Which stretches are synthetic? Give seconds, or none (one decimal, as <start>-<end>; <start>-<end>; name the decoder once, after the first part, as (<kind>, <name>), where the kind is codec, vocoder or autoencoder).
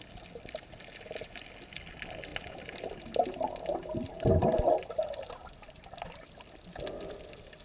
none